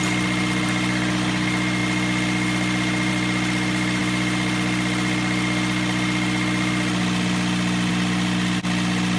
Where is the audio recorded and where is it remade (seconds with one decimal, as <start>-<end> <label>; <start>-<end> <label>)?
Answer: 0.0-9.2 recorded